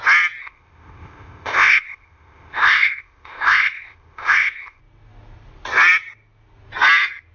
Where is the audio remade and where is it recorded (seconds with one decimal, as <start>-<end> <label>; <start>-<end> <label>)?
0.0-0.4 recorded; 0.4-4.8 remade; 4.8-7.3 recorded